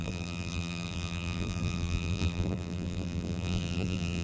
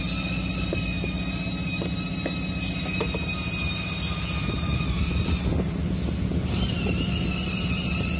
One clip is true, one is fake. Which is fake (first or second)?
first